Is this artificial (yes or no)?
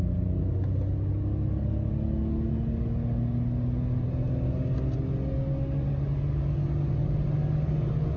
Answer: no